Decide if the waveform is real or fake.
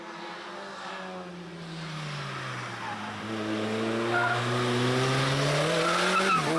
real